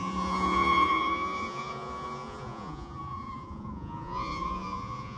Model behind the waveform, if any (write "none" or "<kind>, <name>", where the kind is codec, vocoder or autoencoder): vocoder, Vocos